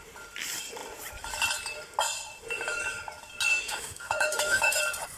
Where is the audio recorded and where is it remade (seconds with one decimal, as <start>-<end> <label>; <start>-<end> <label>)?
0.0-3.5 recorded; 3.5-4.8 remade; 4.8-5.2 recorded